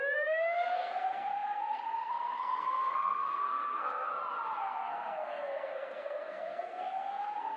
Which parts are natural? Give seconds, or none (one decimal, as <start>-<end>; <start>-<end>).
4.1-4.6